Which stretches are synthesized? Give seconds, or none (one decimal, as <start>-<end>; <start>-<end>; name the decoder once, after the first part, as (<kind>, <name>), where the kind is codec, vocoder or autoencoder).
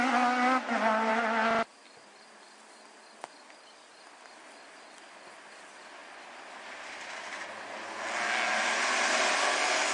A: none